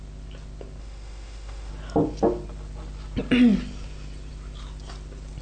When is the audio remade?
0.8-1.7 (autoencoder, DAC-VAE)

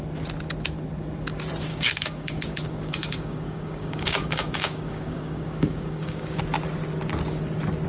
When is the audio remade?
1.7-6.4 (codec, DAC)